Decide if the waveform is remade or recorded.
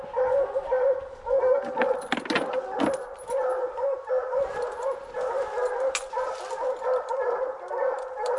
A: recorded